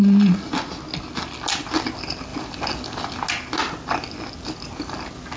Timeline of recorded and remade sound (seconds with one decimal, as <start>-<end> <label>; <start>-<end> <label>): 0.0-5.4 recorded